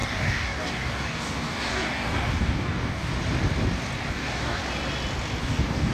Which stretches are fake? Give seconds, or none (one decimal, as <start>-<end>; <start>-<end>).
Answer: 0.0-3.1; 4.1-4.6; 5.4-5.9